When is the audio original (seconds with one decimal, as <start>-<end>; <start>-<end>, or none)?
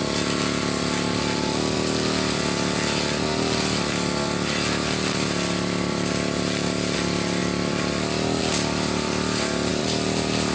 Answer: 0.0-10.5